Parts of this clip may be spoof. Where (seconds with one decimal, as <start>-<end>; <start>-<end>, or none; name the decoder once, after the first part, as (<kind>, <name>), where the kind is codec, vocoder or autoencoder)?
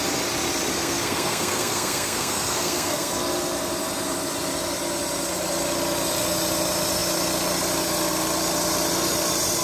0.7-3.1 (codec, SNAC)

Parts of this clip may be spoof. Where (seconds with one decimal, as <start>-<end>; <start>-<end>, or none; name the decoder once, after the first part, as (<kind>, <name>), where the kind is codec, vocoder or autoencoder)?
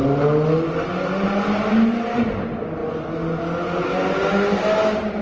none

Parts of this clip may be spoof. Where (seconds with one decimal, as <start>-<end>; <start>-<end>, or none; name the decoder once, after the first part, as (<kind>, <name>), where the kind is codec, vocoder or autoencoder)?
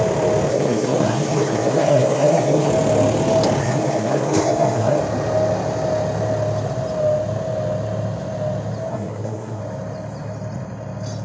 0.5-2.7 (codec, SNAC); 3.6-5.0; 8.9-9.6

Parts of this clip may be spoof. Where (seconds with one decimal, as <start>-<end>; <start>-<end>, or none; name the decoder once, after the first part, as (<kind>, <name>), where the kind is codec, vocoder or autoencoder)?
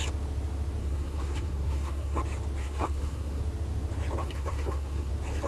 0.8-2.2 (codec, SNAC); 2.6-3.4; 4.2-5.1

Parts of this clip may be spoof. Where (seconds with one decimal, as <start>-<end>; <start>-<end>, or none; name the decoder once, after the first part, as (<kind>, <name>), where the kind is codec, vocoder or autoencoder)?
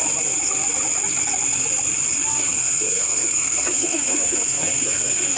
2.3-5.4 (codec, SNAC)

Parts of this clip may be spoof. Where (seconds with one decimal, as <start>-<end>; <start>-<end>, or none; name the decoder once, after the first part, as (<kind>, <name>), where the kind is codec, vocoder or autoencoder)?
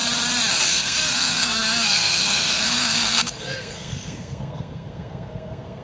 0.7-5.8 (codec, SNAC)